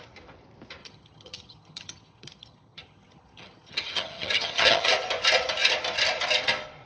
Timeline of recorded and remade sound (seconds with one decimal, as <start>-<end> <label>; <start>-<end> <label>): 0.0-0.8 recorded; 0.8-4.9 remade; 4.9-6.9 recorded